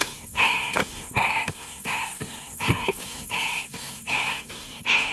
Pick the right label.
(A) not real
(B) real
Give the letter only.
A